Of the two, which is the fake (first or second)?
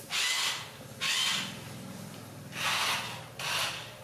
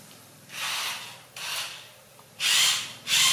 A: second